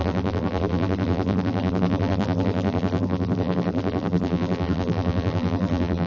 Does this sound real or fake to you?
fake